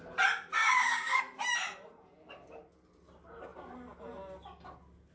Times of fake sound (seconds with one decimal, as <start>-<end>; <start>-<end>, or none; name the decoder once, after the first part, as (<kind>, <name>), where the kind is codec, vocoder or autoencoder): 0.6-1.2 (codec, DAC)